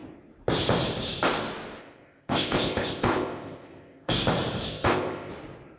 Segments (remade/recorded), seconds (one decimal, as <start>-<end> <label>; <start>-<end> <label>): 0.0-1.8 recorded; 1.8-4.1 remade; 4.1-4.7 recorded; 4.7-5.3 remade; 5.3-5.8 recorded